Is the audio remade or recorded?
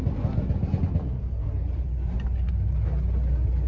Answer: recorded